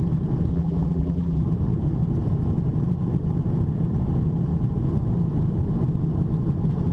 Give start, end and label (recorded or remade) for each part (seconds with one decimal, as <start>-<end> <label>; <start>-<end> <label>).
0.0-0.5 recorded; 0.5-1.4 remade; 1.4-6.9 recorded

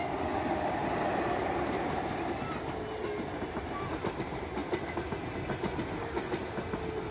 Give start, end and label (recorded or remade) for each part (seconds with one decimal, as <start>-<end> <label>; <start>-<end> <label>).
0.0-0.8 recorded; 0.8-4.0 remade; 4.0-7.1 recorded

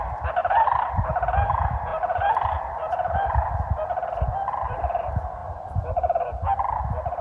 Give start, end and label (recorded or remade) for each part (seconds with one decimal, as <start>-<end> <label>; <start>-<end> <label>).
0.0-0.4 recorded; 0.4-1.1 remade; 1.1-1.9 recorded; 1.9-4.8 remade; 4.8-5.4 recorded; 5.4-6.2 remade; 6.2-7.2 recorded